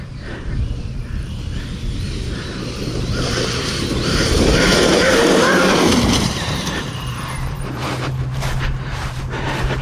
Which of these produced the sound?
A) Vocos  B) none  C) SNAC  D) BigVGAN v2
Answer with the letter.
D